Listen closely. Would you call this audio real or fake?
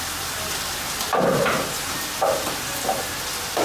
real